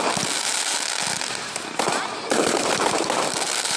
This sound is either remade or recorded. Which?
recorded